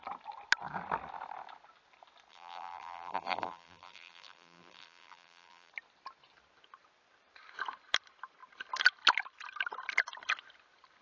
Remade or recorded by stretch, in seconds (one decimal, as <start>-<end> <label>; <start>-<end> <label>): 0.0-2.3 recorded; 2.3-5.7 remade; 5.7-11.0 recorded